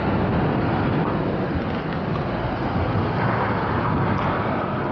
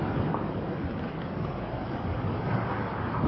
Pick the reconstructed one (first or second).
second